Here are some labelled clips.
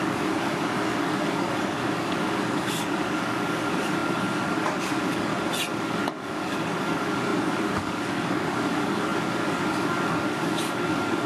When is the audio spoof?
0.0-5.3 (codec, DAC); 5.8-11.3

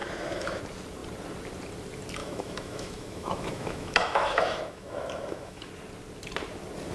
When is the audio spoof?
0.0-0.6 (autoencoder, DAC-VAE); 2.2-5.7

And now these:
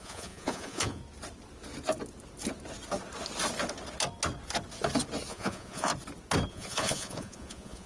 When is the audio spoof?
0.0-1.0 (vocoder, Vocos); 5.3-5.9; 6.5-7.9

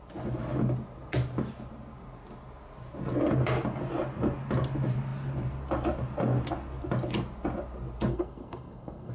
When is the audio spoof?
8.1-9.1 (codec, SNAC)